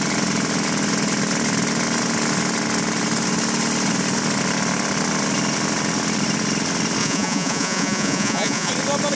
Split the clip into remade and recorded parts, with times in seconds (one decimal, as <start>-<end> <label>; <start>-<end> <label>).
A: 0.0-7.0 recorded; 7.0-8.7 remade; 8.7-9.1 recorded

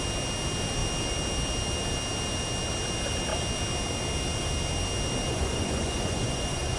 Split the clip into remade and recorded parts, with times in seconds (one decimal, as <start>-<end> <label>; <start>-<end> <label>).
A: 0.0-5.3 recorded; 5.3-6.8 remade

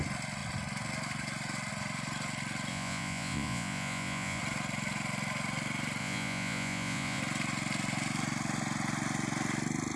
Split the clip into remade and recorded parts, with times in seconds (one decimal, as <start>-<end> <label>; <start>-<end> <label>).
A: 0.0-2.7 recorded; 2.7-4.4 remade; 4.4-6.0 recorded; 6.0-7.2 remade; 7.2-10.0 recorded